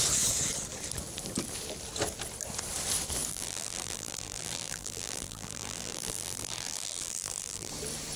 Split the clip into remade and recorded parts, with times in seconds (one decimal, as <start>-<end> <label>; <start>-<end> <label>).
0.0-3.3 recorded; 3.3-7.7 remade; 7.7-8.2 recorded